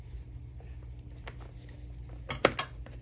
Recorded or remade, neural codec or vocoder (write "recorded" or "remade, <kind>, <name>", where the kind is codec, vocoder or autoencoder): recorded